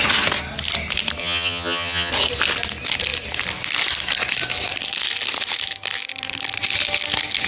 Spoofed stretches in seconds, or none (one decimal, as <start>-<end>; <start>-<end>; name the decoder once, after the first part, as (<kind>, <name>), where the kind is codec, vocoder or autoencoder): 1.2-2.1 (vocoder, HiFi-GAN)